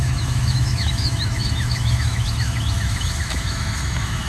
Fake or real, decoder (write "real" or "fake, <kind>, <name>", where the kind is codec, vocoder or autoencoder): fake, autoencoder, DAC-VAE